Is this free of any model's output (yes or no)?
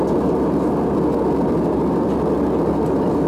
yes